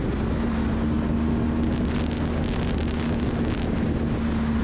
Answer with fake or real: real